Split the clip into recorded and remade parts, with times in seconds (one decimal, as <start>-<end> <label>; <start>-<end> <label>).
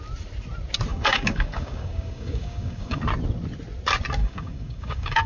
0.0-0.9 recorded; 0.9-3.0 remade; 3.0-4.2 recorded; 4.2-5.3 remade